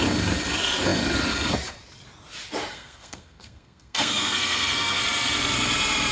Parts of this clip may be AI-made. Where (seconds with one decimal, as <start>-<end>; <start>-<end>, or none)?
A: 2.7-5.0